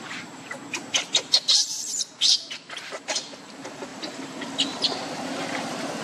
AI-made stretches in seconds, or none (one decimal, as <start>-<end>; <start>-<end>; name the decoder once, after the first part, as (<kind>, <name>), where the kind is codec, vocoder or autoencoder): 0.0-0.6 (vocoder, BigVGAN v2); 1.5-6.0